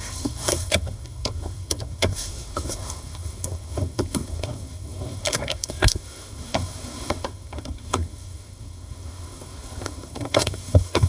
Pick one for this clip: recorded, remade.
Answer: remade